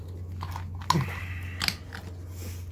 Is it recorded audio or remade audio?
recorded